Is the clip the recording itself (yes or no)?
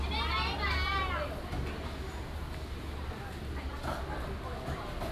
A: yes